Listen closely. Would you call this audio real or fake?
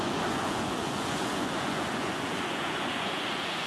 fake